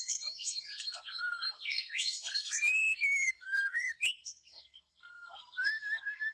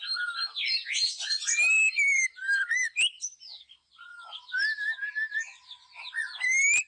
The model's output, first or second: first